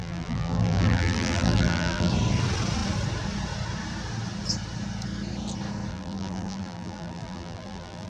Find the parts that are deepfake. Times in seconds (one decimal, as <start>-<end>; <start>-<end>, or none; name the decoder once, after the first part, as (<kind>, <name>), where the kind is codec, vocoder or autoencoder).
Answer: 0.0-2.1 (vocoder, BigVGAN v2); 5.9-8.1